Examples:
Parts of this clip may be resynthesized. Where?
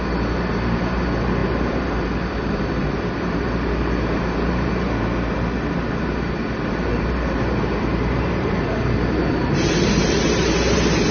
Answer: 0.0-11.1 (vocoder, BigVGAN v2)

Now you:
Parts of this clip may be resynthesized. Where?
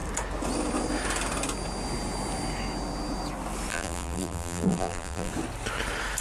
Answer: 3.7-5.3 (vocoder, BigVGAN v2)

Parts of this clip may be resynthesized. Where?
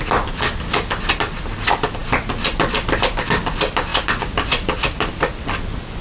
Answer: none